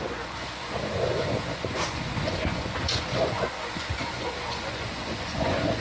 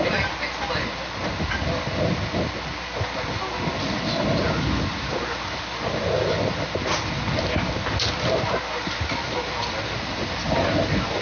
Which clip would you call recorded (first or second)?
second